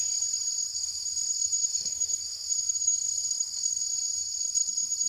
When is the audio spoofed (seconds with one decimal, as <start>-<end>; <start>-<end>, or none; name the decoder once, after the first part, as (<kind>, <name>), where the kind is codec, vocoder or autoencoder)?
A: 0.7-3.8 (codec, SNAC); 4.2-5.1